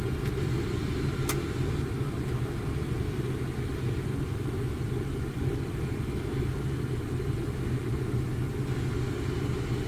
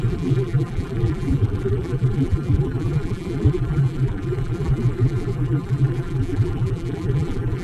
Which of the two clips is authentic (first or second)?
first